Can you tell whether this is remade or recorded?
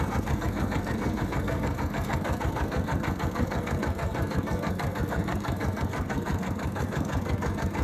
remade